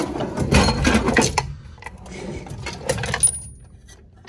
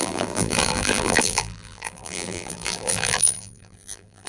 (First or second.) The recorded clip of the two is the first